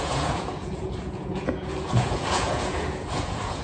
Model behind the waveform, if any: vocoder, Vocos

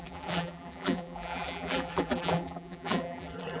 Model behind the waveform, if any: vocoder, BigVGAN v2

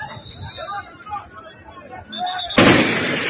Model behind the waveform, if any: none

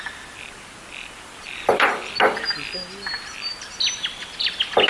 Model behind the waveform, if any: none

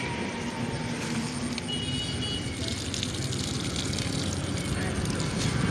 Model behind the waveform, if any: none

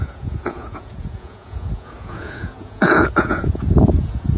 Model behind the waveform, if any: vocoder, Vocos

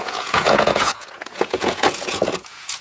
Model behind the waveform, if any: vocoder, Vocos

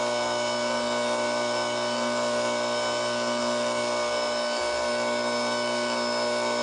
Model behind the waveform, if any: none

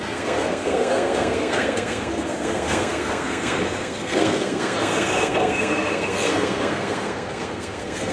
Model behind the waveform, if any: codec, SNAC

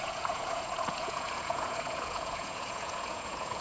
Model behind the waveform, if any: vocoder, Vocos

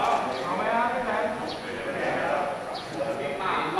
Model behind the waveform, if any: vocoder, Vocos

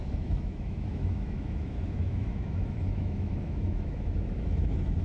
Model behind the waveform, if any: autoencoder, DAC-VAE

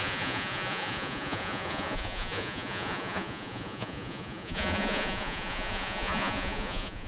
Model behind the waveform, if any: vocoder, Vocos